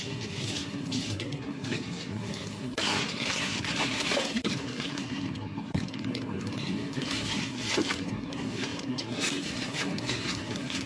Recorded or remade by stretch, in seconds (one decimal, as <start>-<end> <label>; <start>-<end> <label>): 0.0-10.9 remade